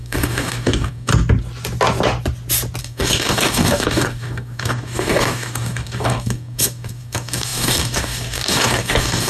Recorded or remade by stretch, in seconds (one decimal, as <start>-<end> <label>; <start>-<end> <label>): 0.0-1.1 remade; 1.1-2.8 recorded; 2.8-9.3 remade